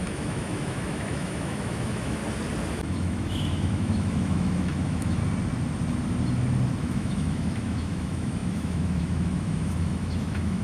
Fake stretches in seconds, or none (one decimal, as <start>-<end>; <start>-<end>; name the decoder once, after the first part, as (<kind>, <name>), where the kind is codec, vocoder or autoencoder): 0.0-2.2 (autoencoder, DAC-VAE); 2.7-5.2; 6.8-10.6